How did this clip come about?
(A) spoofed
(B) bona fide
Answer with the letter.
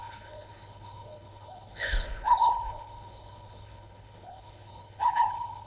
A